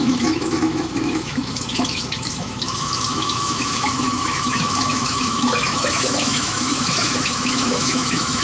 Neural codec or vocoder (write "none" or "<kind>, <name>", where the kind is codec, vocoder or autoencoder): autoencoder, DAC-VAE